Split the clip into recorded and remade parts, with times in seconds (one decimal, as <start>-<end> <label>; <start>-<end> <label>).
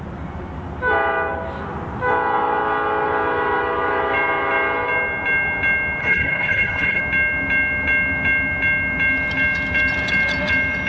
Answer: 0.0-6.0 recorded; 6.0-7.0 remade; 7.0-10.9 recorded